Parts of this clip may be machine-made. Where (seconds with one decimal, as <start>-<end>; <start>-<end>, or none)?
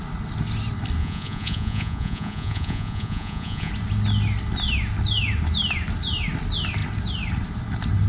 1.0-3.7